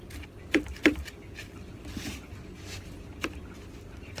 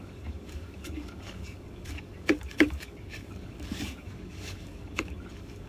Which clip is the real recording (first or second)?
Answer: first